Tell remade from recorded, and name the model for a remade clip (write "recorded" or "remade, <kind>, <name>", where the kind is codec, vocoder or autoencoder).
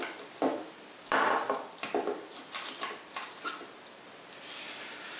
recorded